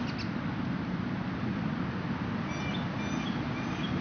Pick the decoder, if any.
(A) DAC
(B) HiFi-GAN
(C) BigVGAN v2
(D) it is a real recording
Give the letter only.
D